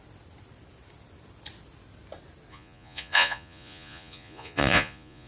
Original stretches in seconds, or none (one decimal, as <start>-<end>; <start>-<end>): 0.0-2.5